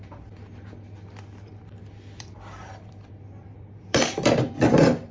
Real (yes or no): no